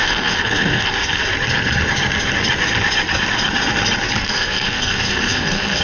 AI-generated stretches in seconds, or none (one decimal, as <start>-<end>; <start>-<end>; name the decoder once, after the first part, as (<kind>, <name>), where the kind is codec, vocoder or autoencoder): 0.0-1.2 (codec, SNAC); 4.2-5.8